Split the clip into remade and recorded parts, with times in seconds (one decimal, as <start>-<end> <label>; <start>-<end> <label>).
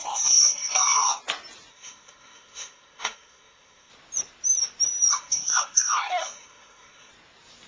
0.0-1.2 remade; 1.2-1.7 recorded; 1.7-3.9 remade; 3.9-5.1 recorded; 5.1-7.1 remade; 7.1-7.7 recorded